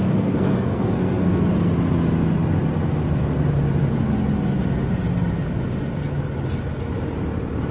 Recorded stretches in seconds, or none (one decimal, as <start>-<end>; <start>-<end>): 1.7-7.7